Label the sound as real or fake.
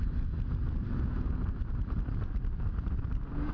real